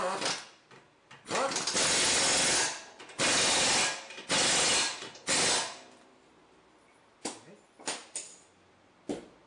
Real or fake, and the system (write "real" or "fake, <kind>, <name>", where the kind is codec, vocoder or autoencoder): real